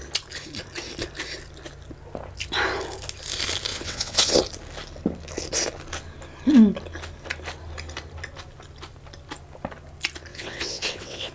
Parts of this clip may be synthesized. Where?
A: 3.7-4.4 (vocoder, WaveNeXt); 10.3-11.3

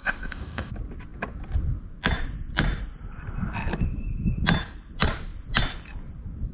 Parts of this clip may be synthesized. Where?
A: 0.0-0.7 (codec, ZipCodec)

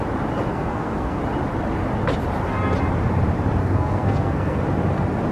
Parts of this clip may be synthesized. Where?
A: 0.5-1.2 (codec, SNAC); 3.6-4.6

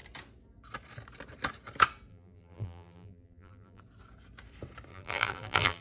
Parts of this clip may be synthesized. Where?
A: 2.1-3.8 (vocoder, BigVGAN v2); 4.9-5.8

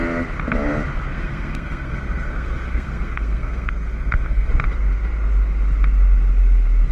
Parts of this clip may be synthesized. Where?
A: 1.1-4.5 (codec, SNAC)

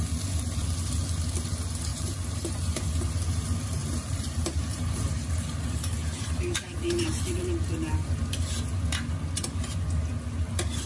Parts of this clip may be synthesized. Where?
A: 1.9-2.8 (vocoder, BigVGAN v2); 3.8-7.4